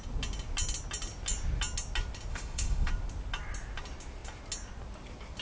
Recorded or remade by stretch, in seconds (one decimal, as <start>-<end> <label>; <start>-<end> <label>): 0.0-2.3 recorded; 2.3-2.9 remade; 2.9-5.4 recorded